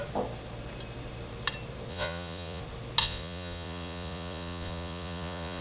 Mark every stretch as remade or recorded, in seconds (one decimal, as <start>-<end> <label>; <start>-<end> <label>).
0.0-1.9 recorded; 1.9-2.6 remade; 2.6-3.0 recorded; 3.0-5.6 remade